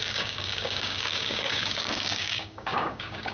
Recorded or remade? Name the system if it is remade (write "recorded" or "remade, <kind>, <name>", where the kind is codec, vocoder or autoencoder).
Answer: remade, codec, DAC